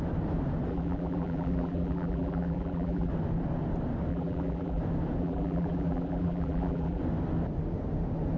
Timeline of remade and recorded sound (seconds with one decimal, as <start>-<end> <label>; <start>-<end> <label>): 0.0-0.7 recorded; 0.7-3.1 remade; 3.1-4.1 recorded; 4.1-4.8 remade; 4.8-5.2 recorded; 5.2-7.0 remade; 7.0-8.4 recorded